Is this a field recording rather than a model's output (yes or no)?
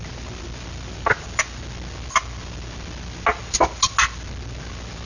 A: yes